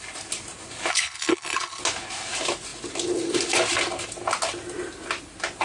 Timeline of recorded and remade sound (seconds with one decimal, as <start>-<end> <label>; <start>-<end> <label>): 0.0-0.9 recorded; 0.9-1.8 remade; 1.8-5.6 recorded